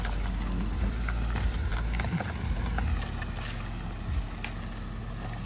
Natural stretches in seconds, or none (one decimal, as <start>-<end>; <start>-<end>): 0.0-5.5

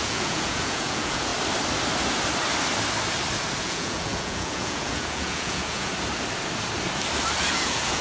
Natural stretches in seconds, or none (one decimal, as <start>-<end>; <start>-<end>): 1.3-3.6; 5.9-7.5

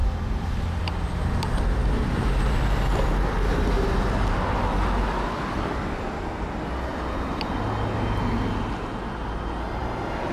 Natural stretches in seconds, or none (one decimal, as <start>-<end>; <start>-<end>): 0.0-10.3

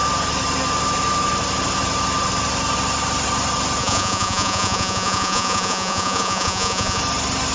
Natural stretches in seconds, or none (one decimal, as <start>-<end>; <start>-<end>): 0.0-3.8; 7.0-7.5